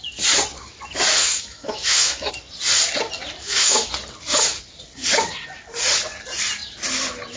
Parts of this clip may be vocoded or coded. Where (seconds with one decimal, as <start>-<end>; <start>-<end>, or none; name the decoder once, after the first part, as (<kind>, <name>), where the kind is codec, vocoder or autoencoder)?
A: 1.2-2.3 (autoencoder, DAC-VAE); 3.4-3.9